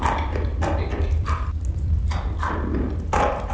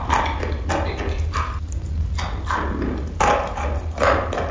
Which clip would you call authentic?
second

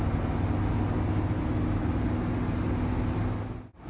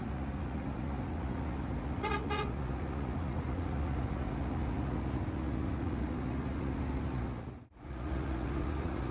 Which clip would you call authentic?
first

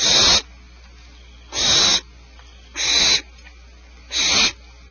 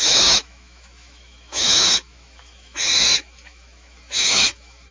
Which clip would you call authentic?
first